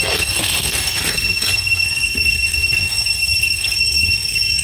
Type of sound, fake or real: fake